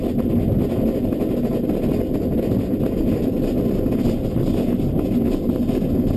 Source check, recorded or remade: recorded